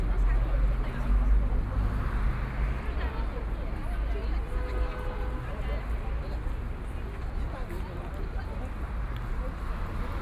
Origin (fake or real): real